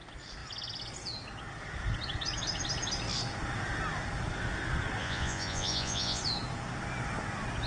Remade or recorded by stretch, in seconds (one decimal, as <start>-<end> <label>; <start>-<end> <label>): 0.0-5.0 recorded; 5.0-6.2 remade; 6.2-7.7 recorded